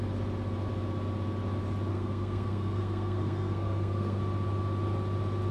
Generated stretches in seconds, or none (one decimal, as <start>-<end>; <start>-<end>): 1.9-4.2